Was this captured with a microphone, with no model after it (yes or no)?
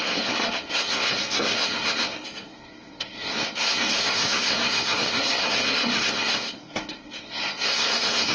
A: no